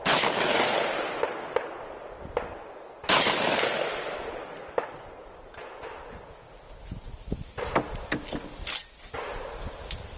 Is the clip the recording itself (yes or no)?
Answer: yes